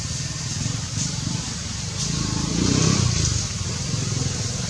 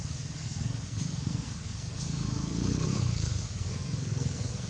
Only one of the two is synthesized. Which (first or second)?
second